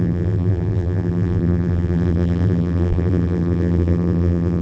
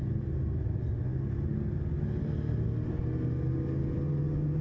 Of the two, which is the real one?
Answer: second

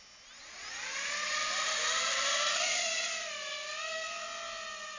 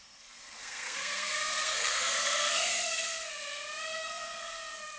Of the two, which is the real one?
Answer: first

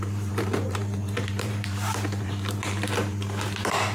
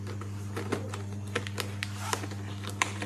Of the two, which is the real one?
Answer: second